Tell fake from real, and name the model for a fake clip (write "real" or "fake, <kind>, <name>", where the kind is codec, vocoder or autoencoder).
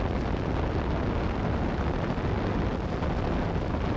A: real